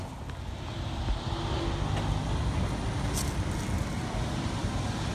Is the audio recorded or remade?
recorded